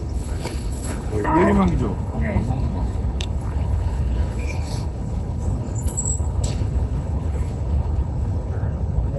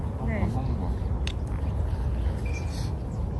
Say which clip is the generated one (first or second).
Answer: first